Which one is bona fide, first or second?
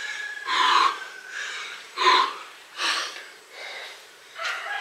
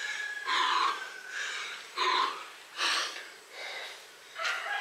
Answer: second